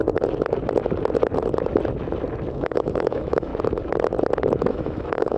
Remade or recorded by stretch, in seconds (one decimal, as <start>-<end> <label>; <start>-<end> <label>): 0.0-2.5 recorded; 2.5-3.5 remade; 3.5-4.7 recorded; 4.7-5.4 remade